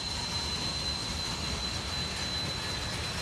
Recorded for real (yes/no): yes